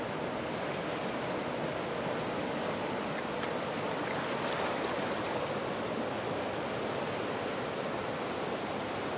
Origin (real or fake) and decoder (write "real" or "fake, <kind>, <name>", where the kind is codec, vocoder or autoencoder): real